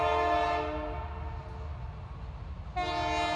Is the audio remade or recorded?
recorded